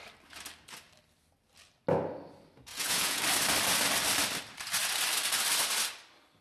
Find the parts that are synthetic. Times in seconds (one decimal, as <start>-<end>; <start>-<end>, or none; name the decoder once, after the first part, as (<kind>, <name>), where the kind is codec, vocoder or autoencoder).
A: 2.7-3.2 (vocoder, Vocos)